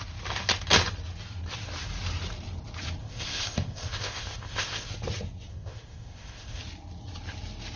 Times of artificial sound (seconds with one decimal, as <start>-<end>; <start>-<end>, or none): 3.0-4.9; 5.5-6.6